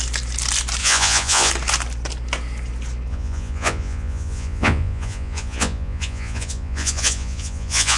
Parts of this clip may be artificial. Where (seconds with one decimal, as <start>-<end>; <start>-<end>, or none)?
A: 0.8-1.5; 3.1-8.0